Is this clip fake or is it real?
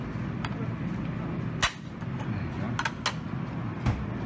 real